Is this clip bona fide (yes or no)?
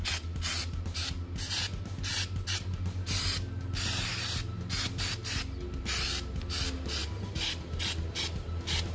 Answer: yes